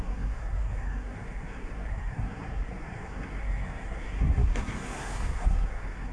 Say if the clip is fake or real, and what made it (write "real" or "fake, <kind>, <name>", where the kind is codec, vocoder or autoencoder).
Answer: fake, codec, SNAC